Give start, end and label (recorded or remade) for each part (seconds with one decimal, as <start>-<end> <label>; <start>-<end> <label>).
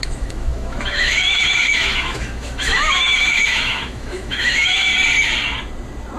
0.0-4.9 remade; 4.9-6.2 recorded